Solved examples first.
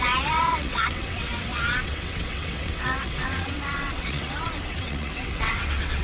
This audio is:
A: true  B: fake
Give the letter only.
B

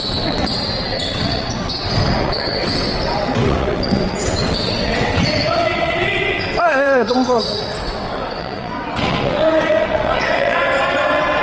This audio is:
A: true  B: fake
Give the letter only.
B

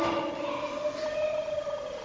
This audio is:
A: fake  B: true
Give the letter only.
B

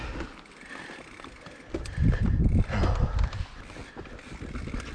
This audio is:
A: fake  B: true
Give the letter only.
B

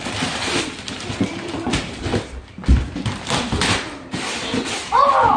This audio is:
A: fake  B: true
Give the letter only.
B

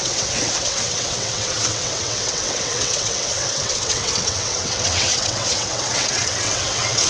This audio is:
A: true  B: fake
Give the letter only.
B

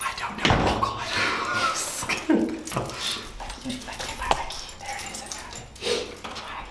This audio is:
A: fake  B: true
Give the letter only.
B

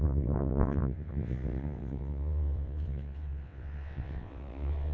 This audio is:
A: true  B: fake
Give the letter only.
B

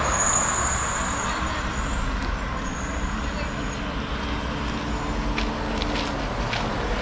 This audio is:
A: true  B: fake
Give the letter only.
A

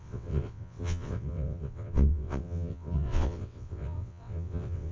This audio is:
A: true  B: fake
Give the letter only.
B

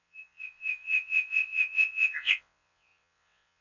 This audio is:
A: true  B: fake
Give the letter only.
B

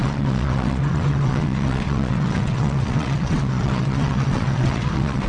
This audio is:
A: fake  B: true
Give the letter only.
A